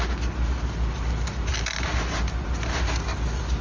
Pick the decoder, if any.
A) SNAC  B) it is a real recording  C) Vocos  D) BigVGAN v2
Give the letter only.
B